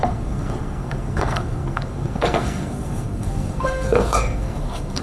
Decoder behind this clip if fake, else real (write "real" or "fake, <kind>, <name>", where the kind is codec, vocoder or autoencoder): fake, codec, SNAC